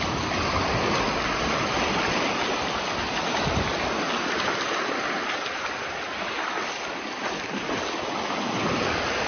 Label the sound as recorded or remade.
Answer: recorded